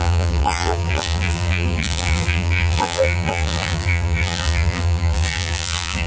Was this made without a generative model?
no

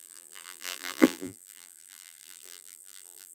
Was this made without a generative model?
no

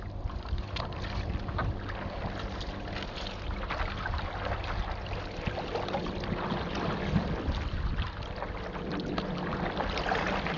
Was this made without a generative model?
yes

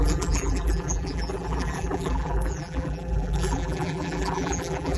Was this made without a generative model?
no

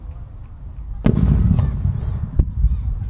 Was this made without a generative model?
yes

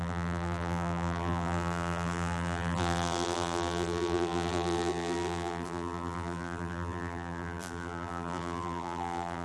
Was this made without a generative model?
no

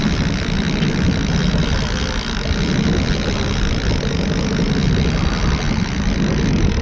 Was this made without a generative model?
yes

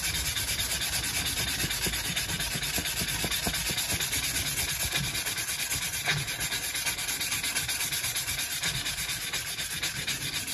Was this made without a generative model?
yes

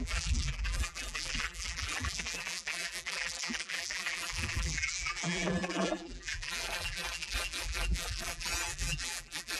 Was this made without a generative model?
no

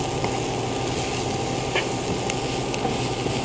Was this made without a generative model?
yes